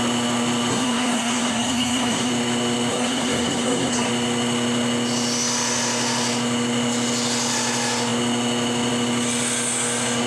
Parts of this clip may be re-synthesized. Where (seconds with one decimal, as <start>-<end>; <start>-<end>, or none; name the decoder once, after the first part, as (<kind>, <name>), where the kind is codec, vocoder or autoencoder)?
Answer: 0.7-2.3 (codec, SNAC); 2.9-4.1